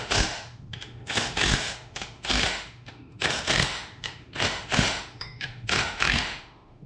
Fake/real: fake